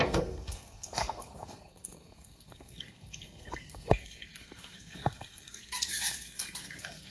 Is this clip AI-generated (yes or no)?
yes